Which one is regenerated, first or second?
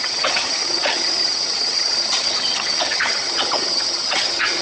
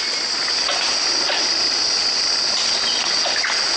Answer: first